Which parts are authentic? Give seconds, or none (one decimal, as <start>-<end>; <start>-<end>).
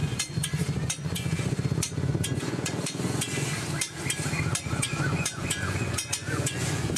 3.5-4.6